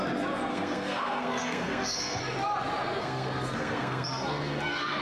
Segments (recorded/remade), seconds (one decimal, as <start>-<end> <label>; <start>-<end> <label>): 0.0-0.5 recorded; 0.5-2.2 remade; 2.2-3.0 recorded; 3.0-5.0 remade